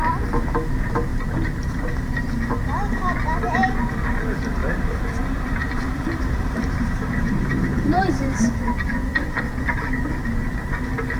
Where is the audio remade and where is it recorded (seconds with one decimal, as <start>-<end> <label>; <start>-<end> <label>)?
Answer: 0.0-1.1 recorded; 1.1-1.9 remade; 1.9-4.6 recorded; 4.6-8.7 remade; 8.7-11.2 recorded